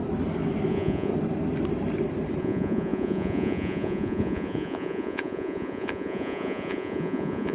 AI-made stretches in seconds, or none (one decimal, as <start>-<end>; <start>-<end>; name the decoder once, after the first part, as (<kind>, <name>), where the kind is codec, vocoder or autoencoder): 0.7-1.1 (vocoder, Vocos); 2.4-7.5